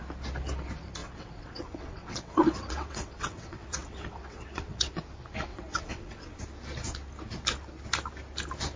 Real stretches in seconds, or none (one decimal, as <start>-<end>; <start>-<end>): 0.0-1.0; 4.9-5.5; 6.4-8.8